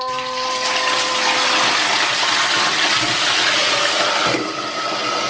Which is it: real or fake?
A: fake